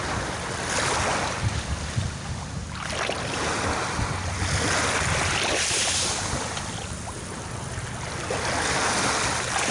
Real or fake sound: real